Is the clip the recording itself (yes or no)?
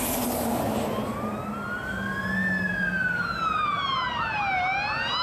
yes